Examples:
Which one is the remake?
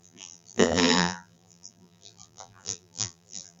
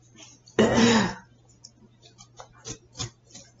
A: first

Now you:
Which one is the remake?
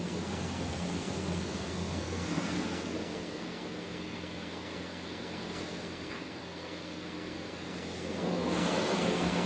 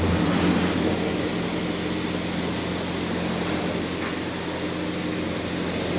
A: first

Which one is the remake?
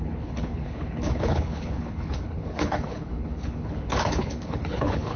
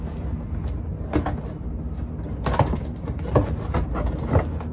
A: first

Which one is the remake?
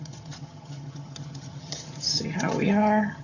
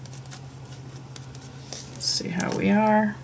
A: first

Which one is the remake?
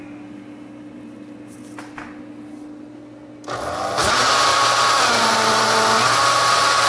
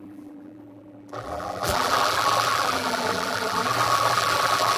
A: second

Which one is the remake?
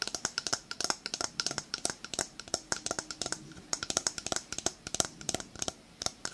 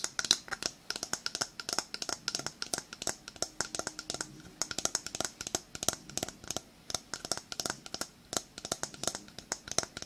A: first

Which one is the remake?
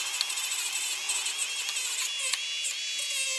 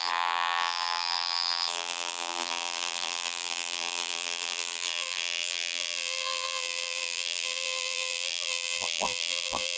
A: second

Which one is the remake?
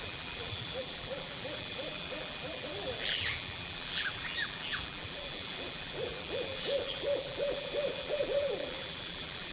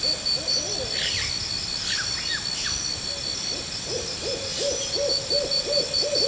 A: first